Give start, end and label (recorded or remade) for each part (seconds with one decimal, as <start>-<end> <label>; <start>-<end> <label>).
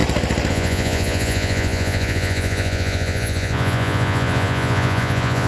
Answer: 0.0-0.5 recorded; 0.5-5.5 remade